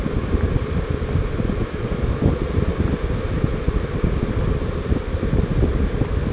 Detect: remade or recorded recorded